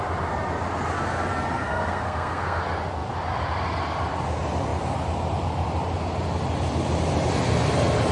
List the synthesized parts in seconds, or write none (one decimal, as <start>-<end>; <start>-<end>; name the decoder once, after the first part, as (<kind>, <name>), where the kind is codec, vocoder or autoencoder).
1.5-2.6 (codec, SNAC)